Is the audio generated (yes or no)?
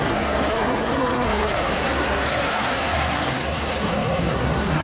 yes